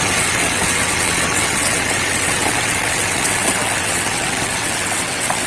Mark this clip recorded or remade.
remade